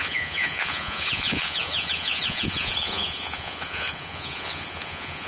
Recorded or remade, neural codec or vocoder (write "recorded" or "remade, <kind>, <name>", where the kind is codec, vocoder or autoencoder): remade, vocoder, Vocos